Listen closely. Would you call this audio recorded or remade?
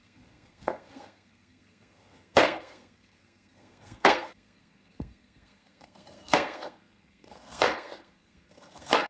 remade